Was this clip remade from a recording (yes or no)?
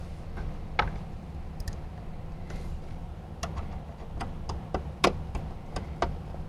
no